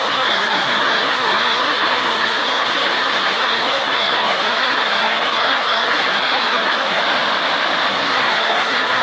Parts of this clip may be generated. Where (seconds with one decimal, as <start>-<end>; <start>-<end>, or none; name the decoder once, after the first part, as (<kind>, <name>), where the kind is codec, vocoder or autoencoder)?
0.0-7.0 (codec, SNAC); 7.9-9.0